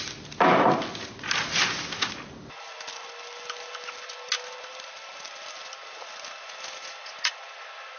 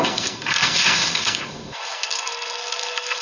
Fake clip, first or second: second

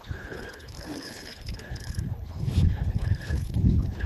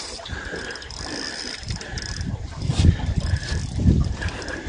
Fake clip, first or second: first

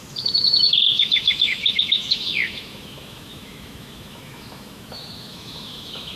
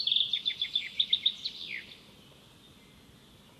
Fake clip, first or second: first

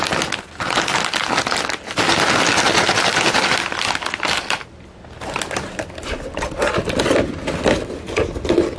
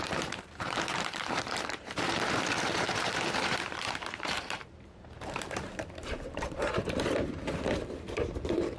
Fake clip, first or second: second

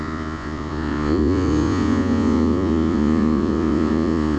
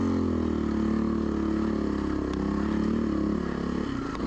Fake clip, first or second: first